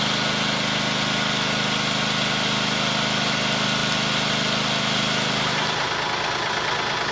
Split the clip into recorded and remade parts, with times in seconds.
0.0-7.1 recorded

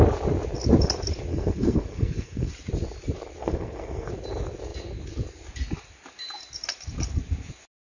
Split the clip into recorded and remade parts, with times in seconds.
0.0-1.3 recorded; 1.3-2.5 remade; 2.5-3.4 recorded; 3.4-4.1 remade; 4.1-7.8 recorded

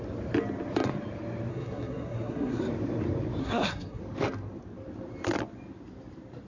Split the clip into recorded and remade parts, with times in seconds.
0.0-1.5 recorded; 1.5-2.6 remade; 2.6-3.4 recorded; 3.4-4.0 remade; 4.0-6.5 recorded

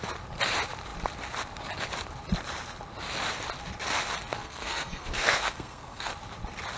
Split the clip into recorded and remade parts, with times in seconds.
0.0-4.4 recorded; 4.4-6.1 remade; 6.1-6.8 recorded

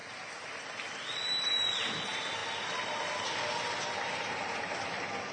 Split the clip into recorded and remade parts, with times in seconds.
0.0-5.3 recorded